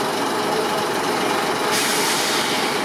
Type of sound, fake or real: real